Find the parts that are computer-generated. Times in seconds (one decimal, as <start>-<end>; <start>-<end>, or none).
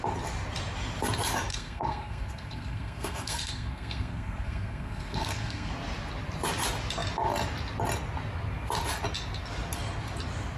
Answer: 1.5-5.7